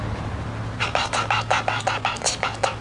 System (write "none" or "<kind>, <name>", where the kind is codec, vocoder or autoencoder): none